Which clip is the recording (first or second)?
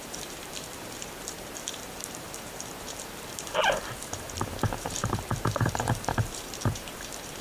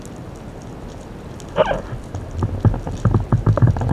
second